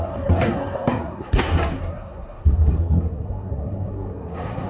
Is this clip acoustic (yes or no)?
no